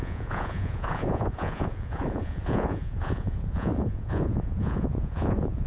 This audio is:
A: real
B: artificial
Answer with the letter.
B